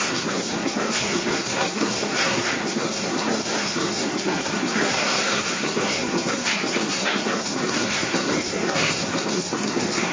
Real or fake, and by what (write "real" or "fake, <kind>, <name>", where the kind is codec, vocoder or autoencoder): fake, codec, SNAC